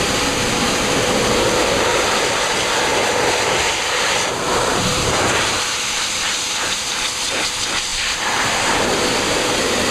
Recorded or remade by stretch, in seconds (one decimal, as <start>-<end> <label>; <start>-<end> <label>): 0.0-4.7 recorded; 4.7-7.3 remade; 7.3-9.9 recorded